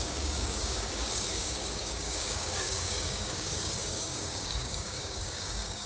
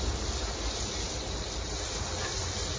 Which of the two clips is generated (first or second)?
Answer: first